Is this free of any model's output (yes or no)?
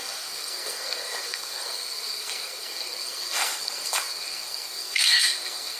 no